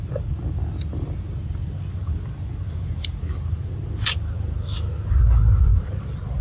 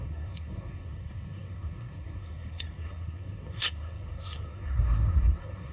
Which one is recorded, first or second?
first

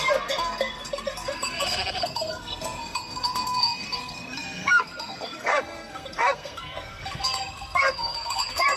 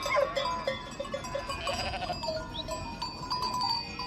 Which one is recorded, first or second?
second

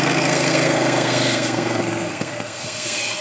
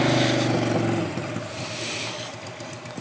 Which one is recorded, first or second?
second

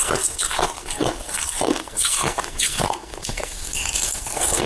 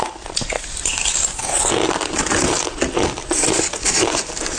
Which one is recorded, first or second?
second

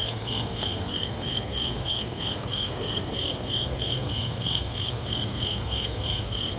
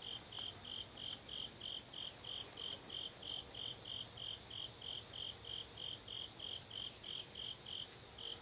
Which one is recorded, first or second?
second